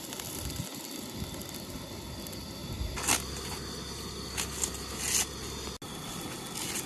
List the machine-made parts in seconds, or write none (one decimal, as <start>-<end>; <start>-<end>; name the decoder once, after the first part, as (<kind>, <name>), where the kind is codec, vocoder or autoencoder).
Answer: none